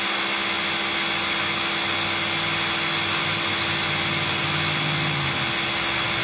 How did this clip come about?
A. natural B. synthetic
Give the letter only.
A